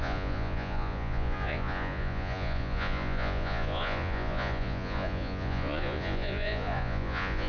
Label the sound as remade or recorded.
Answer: remade